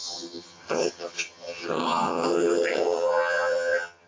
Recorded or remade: remade